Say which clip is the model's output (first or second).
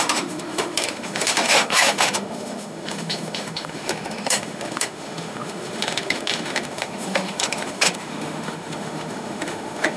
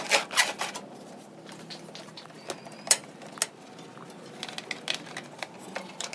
first